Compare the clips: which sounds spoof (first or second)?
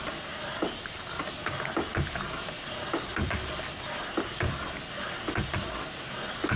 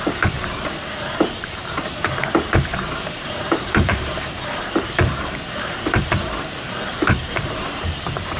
second